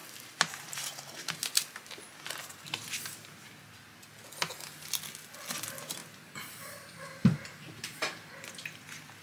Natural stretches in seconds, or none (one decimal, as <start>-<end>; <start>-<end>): 0.0-6.0; 8.3-9.2